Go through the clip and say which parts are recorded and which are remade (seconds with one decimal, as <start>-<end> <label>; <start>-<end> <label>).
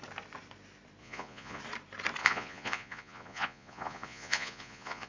0.0-1.0 recorded; 1.0-1.6 remade; 1.6-2.2 recorded; 2.2-5.1 remade